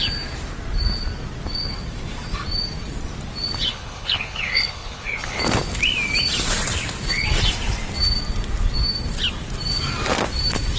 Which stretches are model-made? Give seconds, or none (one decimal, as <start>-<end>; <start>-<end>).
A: 3.7-5.4